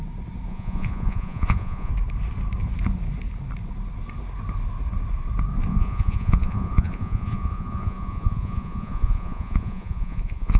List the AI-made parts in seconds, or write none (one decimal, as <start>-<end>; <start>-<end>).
0.5-1.9; 5.7-10.6